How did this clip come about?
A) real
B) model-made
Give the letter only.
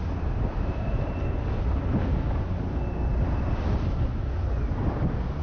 A